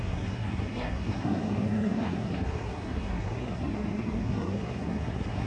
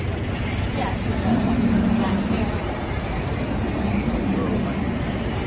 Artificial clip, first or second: first